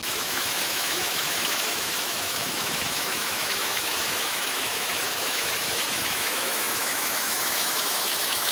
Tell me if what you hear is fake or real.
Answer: fake